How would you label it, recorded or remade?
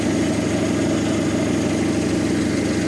recorded